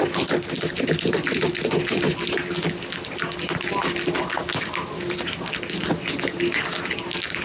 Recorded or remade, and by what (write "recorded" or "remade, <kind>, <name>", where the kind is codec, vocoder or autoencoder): recorded